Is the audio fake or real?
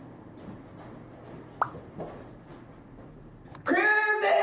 real